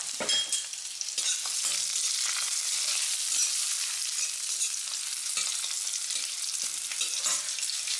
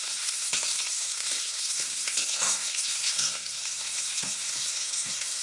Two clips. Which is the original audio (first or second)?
first